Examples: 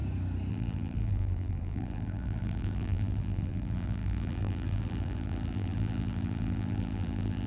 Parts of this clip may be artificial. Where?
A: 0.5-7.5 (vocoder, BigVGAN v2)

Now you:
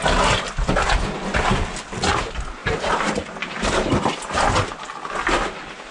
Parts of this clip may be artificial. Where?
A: 2.6-4.1 (vocoder, BigVGAN v2)

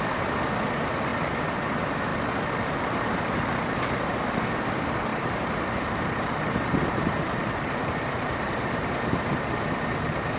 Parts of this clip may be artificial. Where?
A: 2.1-4.3 (vocoder, BigVGAN v2); 5.1-9.3